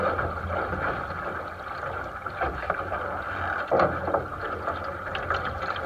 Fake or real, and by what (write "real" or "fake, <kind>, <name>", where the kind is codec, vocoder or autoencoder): real